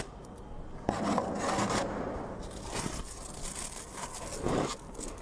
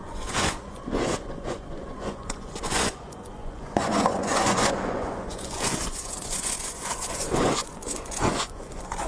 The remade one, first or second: second